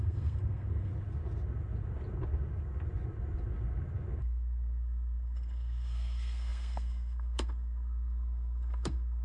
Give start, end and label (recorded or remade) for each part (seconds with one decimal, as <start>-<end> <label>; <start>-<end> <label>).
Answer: 0.0-0.9 remade; 0.9-4.2 recorded; 4.2-9.2 remade